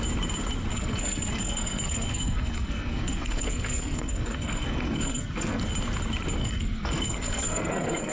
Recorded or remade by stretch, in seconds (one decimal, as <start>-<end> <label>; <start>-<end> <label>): 0.0-0.7 recorded; 0.7-5.6 remade; 5.6-6.4 recorded; 6.4-8.1 remade